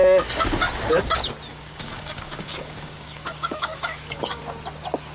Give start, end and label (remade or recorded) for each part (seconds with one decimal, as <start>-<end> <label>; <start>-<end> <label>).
0.0-1.5 recorded; 1.5-4.4 remade; 4.4-5.1 recorded